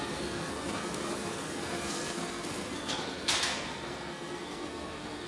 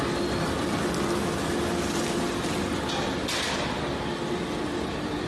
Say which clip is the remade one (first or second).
first